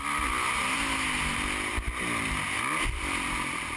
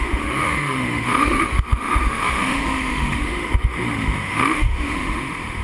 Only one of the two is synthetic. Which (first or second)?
second